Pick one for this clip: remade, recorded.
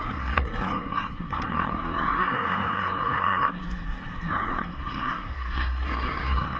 remade